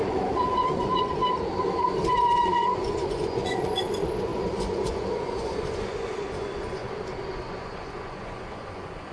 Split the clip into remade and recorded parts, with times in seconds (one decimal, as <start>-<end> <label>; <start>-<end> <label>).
0.0-1.2 remade; 1.2-1.8 recorded; 1.8-9.1 remade